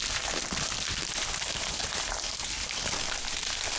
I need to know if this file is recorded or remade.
recorded